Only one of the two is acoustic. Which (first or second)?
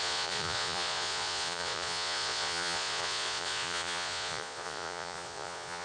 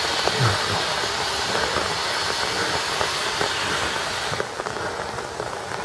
second